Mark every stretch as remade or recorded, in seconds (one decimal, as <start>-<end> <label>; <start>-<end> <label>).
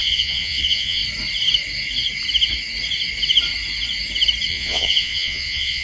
0.0-1.0 remade; 1.0-4.5 recorded; 4.5-5.8 remade